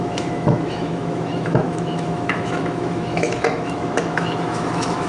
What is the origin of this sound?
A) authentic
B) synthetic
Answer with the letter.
B